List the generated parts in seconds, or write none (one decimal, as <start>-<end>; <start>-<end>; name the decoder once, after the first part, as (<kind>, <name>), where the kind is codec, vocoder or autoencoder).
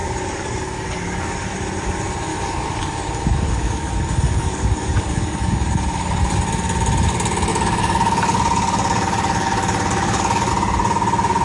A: 0.0-1.5 (codec, DAC); 2.3-6.2; 7.5-10.5